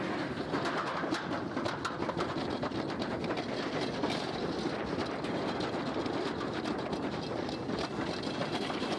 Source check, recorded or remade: recorded